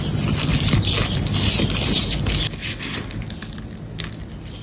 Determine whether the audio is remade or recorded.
recorded